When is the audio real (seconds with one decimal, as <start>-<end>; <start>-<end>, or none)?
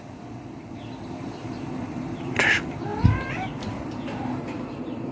none